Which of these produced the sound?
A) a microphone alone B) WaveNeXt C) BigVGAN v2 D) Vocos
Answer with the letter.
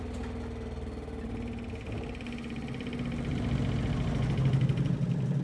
A